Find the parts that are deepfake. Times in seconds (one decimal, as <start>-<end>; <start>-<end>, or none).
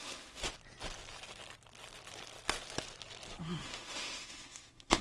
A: 0.0-0.4; 3.4-5.0